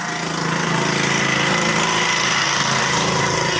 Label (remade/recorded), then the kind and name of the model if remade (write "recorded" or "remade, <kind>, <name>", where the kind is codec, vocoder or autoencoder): recorded